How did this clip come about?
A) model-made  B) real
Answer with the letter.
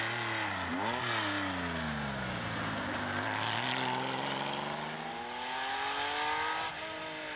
B